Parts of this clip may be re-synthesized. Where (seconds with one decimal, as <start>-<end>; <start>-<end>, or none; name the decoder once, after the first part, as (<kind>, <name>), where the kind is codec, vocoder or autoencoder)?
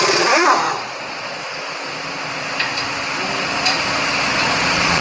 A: 0.0-1.4 (vocoder, Vocos); 4.4-5.0